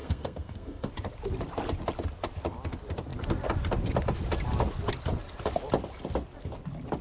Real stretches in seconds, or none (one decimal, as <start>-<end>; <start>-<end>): 0.9-7.0